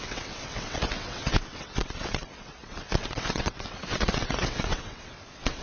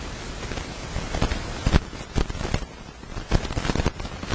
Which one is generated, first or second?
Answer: first